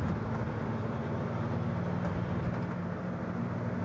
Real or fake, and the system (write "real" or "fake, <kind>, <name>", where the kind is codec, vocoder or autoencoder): real